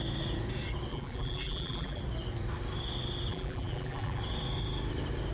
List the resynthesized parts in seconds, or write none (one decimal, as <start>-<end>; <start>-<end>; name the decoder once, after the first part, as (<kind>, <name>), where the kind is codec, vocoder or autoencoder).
0.9-2.0 (vocoder, BigVGAN v2); 3.3-4.2

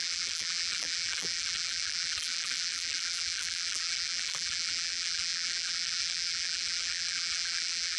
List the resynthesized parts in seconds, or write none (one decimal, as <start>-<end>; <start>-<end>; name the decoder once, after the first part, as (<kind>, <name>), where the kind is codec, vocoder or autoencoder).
0.0-8.0 (vocoder, BigVGAN v2)

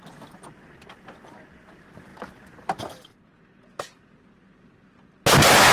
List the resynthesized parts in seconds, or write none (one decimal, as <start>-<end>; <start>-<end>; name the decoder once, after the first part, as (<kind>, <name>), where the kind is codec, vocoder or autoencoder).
0.0-3.3 (vocoder, BigVGAN v2)